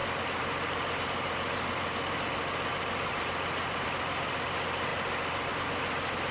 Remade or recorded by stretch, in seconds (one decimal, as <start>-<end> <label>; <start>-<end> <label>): 0.0-6.3 recorded

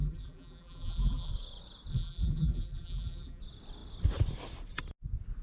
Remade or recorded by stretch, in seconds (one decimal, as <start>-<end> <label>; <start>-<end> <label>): 0.0-1.3 remade; 1.3-1.9 recorded; 1.9-3.4 remade; 3.4-5.4 recorded

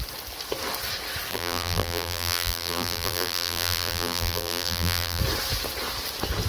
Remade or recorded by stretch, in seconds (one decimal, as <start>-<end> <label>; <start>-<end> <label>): 0.0-1.3 recorded; 1.3-5.2 remade; 5.2-6.5 recorded

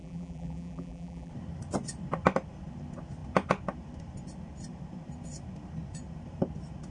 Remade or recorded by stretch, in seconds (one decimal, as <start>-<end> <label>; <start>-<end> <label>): 0.0-1.3 remade; 1.3-6.9 recorded